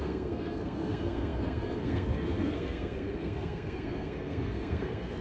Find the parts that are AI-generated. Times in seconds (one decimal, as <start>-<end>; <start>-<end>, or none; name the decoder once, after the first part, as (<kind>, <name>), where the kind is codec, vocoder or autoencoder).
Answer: 0.0-5.2 (codec, SNAC)